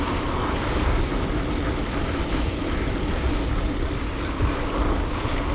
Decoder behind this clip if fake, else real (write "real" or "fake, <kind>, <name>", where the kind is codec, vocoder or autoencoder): real